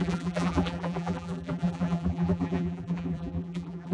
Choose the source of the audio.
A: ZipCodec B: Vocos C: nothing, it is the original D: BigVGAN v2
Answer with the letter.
D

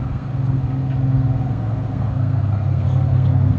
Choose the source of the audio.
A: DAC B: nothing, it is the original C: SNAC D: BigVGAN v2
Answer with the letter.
C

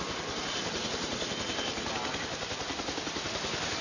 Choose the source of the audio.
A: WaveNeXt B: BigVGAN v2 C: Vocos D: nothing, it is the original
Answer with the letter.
D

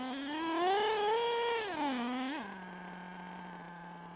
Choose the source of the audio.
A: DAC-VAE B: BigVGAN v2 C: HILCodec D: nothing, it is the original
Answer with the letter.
D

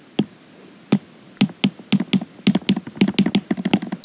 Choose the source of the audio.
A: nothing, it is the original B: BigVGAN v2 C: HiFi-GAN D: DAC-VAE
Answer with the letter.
A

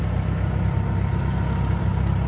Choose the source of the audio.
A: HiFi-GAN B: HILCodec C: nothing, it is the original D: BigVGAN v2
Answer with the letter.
C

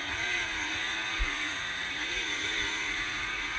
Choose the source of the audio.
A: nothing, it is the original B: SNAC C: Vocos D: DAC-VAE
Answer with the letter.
C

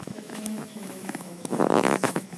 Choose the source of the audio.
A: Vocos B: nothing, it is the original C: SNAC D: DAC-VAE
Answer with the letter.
D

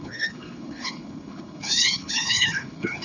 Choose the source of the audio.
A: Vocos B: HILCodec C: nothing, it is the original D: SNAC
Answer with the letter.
B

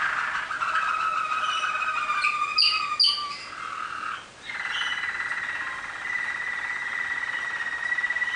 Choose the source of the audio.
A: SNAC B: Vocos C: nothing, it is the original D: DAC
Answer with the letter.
C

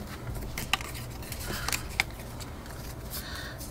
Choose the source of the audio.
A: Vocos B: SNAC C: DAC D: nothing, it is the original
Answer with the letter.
D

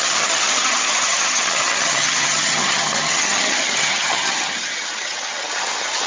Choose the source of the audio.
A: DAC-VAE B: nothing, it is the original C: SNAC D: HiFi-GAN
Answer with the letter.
D